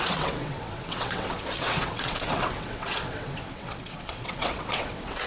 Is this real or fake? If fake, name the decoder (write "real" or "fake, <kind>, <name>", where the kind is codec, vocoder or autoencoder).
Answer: fake, vocoder, WaveNeXt